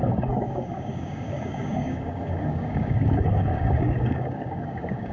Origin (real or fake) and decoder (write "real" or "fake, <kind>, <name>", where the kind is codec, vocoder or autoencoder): fake, codec, DAC